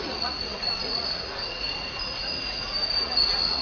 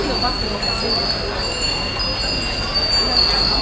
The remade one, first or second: first